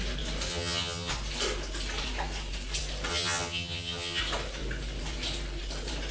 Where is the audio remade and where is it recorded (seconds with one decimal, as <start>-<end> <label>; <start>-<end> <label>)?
0.0-0.5 recorded; 0.5-1.1 remade; 1.1-3.1 recorded; 3.1-4.2 remade; 4.2-6.1 recorded

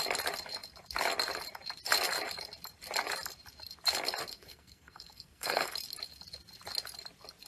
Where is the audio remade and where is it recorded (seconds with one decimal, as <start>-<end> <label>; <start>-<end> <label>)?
0.0-4.3 recorded; 4.3-5.7 remade; 5.7-7.5 recorded

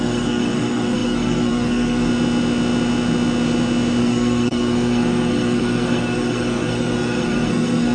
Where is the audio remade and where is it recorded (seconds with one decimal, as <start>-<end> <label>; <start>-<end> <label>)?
0.0-2.1 remade; 2.1-4.0 recorded; 4.0-7.9 remade